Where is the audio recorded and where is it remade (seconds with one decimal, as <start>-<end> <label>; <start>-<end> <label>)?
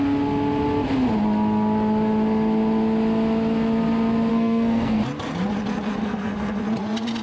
0.0-4.3 recorded; 4.3-5.0 remade; 5.0-6.0 recorded; 6.0-6.6 remade; 6.6-7.2 recorded